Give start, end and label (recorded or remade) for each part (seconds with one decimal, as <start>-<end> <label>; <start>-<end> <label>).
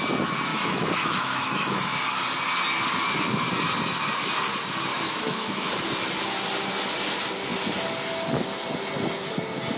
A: 0.0-0.5 recorded; 0.5-2.2 remade; 2.2-4.9 recorded; 4.9-5.7 remade; 5.7-9.8 recorded